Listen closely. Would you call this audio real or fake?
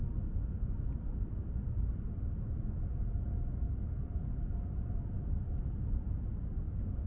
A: fake